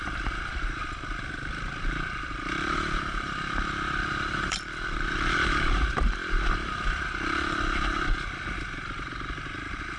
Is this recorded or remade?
remade